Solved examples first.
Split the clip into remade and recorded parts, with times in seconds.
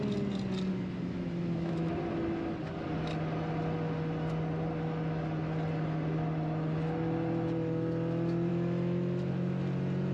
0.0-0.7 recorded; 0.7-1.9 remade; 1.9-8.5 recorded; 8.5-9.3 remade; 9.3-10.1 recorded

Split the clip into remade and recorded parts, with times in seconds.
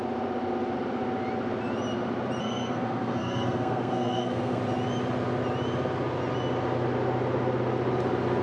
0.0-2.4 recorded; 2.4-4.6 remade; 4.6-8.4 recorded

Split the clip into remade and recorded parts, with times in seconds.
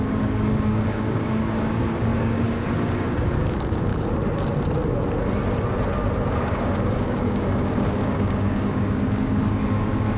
0.0-3.9 remade; 3.9-6.3 recorded; 6.3-10.2 remade